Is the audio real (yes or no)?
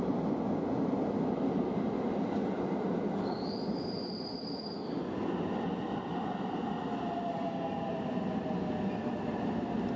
yes